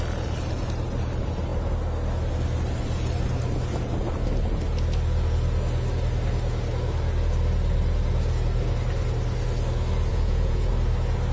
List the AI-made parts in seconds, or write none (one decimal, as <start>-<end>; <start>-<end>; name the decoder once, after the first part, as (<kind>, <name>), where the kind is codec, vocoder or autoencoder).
10.1-10.7 (vocoder, Vocos)